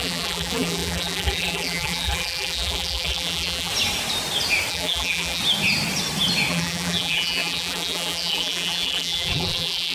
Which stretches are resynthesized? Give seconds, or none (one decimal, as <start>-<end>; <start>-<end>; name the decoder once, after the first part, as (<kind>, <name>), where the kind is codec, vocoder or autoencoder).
0.0-3.7 (vocoder, BigVGAN v2); 4.7-5.4; 6.5-9.9